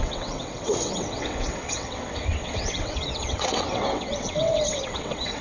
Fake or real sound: fake